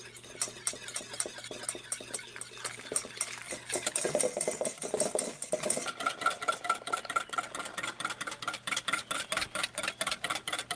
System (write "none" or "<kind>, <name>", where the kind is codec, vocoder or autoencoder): none